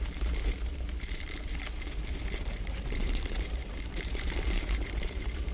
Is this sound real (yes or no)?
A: no